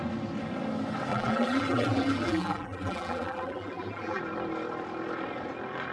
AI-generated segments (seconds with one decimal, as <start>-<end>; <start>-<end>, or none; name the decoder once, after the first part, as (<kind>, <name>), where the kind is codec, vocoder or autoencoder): 1.1-4.2 (vocoder, BigVGAN v2)